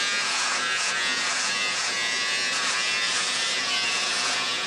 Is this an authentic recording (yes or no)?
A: no